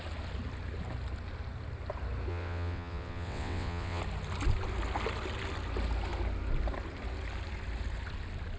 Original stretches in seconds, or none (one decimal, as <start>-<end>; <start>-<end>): 0.0-2.3; 4.0-8.6